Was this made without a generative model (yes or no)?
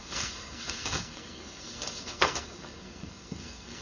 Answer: no